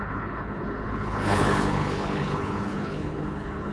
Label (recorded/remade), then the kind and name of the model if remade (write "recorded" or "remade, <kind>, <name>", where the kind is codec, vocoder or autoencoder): remade, codec, HILCodec